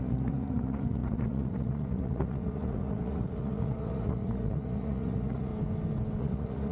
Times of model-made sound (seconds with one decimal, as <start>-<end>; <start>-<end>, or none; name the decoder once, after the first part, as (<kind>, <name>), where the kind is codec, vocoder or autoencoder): 0.0-5.5 (vocoder, Vocos); 6.2-6.7